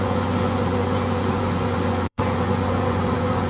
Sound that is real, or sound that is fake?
fake